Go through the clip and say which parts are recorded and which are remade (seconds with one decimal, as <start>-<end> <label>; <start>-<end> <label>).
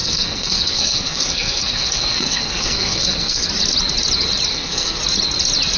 0.0-3.5 remade; 3.5-4.5 recorded; 4.5-5.0 remade; 5.0-5.8 recorded